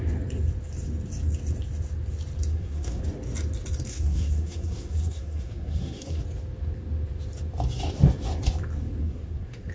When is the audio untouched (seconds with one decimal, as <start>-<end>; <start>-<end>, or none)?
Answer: 0.0-2.5; 3.0-3.9; 6.2-9.0